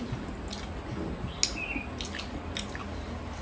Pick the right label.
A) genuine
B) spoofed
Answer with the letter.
A